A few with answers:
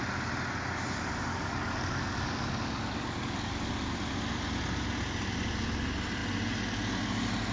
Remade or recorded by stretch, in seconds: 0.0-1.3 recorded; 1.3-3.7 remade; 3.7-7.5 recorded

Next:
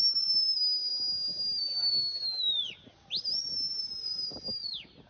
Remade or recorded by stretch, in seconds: 0.0-5.1 recorded

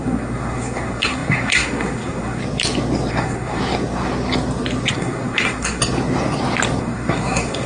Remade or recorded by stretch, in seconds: 0.0-2.4 remade; 2.4-3.1 recorded; 3.1-3.6 remade; 3.6-4.9 recorded; 4.9-5.8 remade; 5.8-6.8 recorded; 6.8-7.7 remade

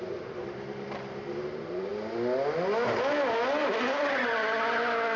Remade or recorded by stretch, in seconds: 0.0-1.9 remade; 1.9-5.2 recorded

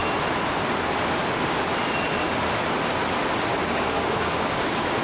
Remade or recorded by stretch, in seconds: 0.0-3.5 recorded; 3.5-5.0 remade